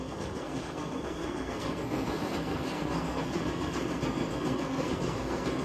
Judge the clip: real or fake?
fake